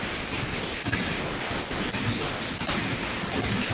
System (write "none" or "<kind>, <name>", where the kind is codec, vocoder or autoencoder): none